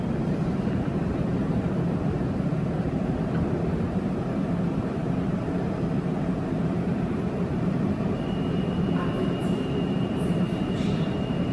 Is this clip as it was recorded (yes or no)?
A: no